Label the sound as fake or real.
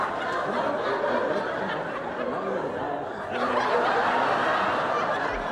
real